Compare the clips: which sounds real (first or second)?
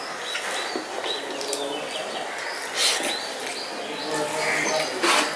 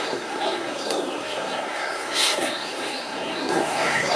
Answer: first